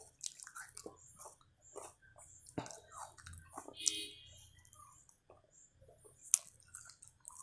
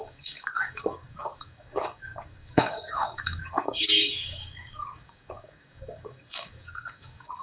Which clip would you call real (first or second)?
first